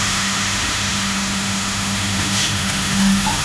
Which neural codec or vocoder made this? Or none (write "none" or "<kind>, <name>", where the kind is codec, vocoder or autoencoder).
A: autoencoder, DAC-VAE